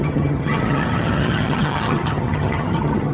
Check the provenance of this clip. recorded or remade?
remade